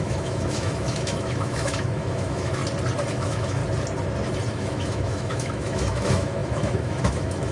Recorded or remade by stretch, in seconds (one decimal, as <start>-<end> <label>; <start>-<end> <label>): 0.0-2.6 remade; 2.6-3.1 recorded; 3.1-3.6 remade; 3.6-4.5 recorded; 4.5-7.5 remade